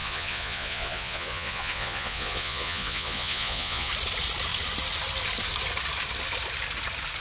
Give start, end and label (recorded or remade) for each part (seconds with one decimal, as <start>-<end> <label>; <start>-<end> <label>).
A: 0.0-3.9 remade; 3.9-7.2 recorded